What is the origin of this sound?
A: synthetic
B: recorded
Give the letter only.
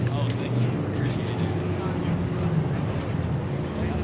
B